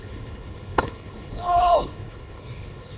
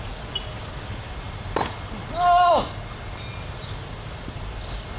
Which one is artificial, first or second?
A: first